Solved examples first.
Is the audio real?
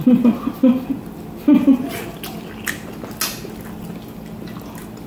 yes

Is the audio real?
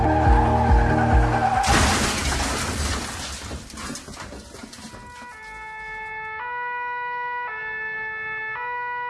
yes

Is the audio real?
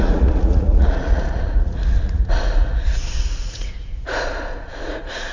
no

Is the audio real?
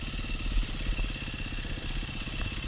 yes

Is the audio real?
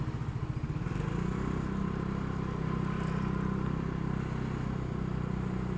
yes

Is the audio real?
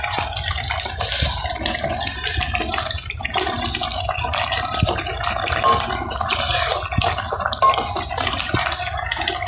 yes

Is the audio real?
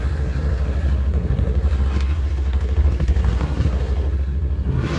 no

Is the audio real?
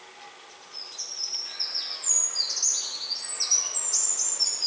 yes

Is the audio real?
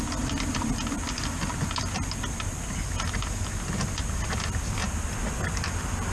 yes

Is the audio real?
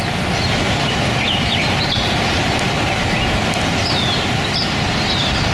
yes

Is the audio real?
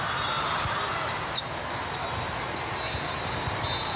yes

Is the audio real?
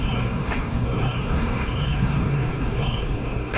no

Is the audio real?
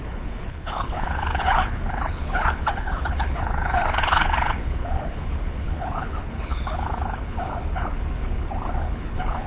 no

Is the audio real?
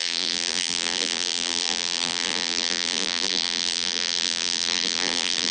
no